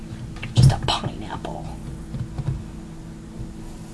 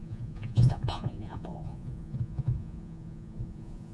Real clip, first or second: first